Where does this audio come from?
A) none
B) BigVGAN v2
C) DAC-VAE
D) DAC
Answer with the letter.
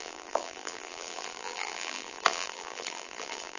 B